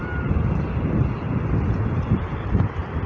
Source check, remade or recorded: recorded